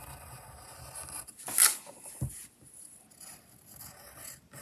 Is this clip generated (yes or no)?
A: no